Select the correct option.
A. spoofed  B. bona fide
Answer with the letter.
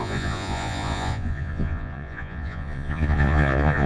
A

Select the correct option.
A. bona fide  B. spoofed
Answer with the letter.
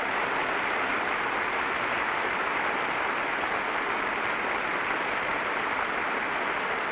A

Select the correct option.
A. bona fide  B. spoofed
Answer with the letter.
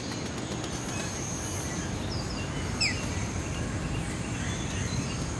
A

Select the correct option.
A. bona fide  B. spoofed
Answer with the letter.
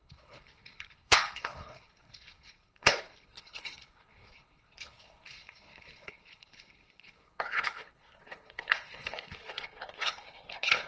B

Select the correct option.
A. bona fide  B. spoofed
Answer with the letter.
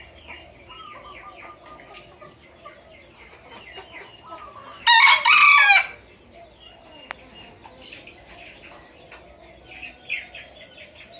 A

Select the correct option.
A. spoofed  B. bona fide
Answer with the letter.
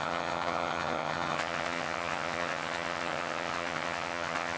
A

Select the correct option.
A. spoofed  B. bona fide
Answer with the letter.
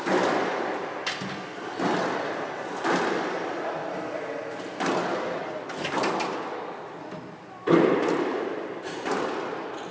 B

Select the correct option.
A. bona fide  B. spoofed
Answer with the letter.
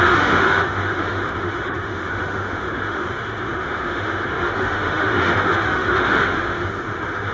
B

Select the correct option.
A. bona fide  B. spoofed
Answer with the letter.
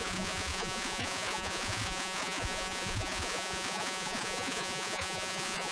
B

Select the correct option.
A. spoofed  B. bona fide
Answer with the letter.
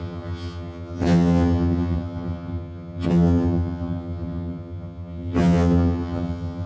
A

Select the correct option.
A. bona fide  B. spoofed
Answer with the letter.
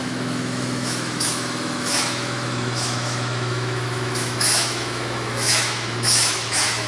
B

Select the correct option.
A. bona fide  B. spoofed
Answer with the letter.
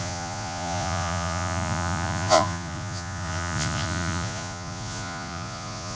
B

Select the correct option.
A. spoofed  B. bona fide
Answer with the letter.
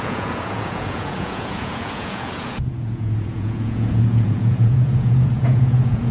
A